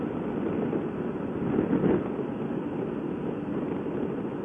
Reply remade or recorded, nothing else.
recorded